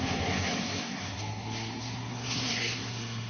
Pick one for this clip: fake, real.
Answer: fake